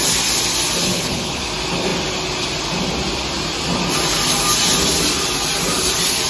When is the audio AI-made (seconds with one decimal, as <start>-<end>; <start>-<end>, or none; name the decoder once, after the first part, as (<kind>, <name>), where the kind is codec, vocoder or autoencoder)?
0.8-1.4 (codec, HILCodec)

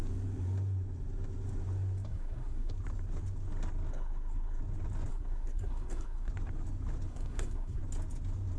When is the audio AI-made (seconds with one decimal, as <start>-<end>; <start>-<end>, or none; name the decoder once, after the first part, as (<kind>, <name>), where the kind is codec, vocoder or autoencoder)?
2.1-2.7 (codec, SNAC); 3.9-4.6; 5.1-6.3; 7.1-7.8

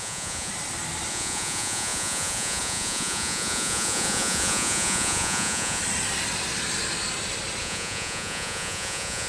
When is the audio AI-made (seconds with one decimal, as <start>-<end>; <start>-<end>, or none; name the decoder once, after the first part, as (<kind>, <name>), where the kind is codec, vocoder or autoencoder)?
0.0-0.5 (vocoder, Vocos); 1.1-5.8; 7.6-9.3

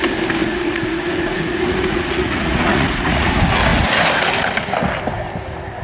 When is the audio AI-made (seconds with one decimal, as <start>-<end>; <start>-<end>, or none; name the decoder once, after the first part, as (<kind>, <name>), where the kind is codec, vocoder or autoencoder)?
0.4-3.3 (vocoder, Vocos)

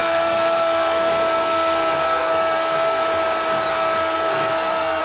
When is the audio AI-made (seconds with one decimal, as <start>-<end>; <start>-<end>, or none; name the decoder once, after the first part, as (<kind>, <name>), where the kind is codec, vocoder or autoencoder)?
0.0-3.0 (codec, SNAC); 3.7-5.0

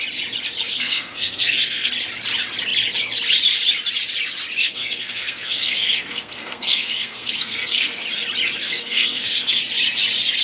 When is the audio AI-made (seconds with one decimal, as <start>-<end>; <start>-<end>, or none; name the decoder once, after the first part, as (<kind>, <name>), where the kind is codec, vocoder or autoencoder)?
0.7-1.9 (codec, SNAC); 4.6-8.0; 8.6-9.6

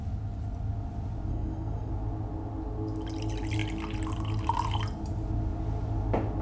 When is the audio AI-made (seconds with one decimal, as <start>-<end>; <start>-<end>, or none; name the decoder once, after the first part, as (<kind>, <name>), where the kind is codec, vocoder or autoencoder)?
1.3-1.9 (codec, SNAC)

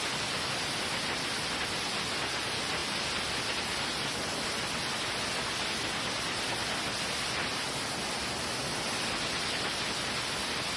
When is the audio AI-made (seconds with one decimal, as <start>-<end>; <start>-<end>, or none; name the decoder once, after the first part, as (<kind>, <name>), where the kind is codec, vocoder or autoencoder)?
none